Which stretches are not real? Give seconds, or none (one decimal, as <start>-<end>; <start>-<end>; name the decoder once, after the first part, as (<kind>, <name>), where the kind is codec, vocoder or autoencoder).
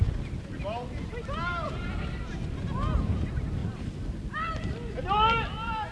none